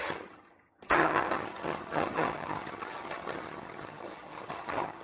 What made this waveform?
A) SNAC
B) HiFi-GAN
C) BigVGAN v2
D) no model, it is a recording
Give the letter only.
B